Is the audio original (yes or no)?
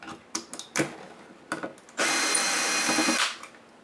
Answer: yes